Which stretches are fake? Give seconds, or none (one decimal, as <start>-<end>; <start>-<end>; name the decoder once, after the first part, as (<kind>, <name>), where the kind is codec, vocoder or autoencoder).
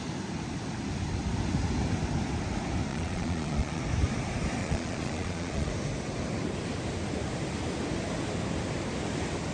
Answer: 2.9-3.8 (vocoder, Vocos); 4.6-5.7